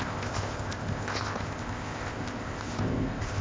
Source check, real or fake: fake